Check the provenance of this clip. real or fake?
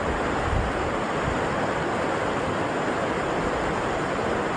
real